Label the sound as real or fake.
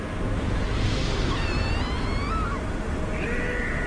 real